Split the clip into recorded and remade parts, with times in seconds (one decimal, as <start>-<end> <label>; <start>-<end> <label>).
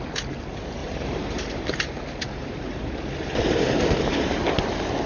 0.0-0.8 recorded; 0.8-2.8 remade; 2.8-5.1 recorded